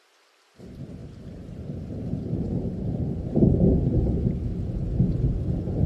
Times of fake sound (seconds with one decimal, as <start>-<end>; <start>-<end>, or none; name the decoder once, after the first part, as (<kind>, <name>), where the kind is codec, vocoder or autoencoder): 1.0-3.2 (vocoder, BigVGAN v2)